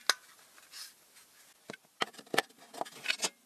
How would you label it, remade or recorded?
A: recorded